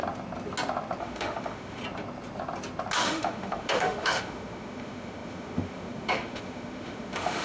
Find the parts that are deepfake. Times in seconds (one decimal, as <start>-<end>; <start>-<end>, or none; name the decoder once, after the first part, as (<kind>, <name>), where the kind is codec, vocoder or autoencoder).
1.0-1.8 (autoencoder, DAC-VAE); 3.0-7.4